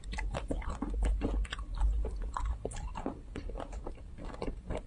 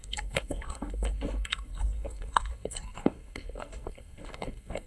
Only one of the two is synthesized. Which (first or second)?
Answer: second